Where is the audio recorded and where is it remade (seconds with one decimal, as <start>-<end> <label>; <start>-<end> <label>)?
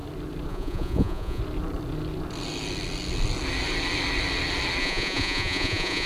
0.0-0.5 recorded; 0.5-1.4 remade; 1.4-4.8 recorded; 4.8-6.1 remade